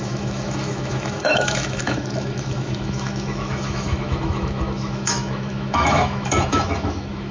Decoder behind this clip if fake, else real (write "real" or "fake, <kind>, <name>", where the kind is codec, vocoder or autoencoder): fake, autoencoder, DAC-VAE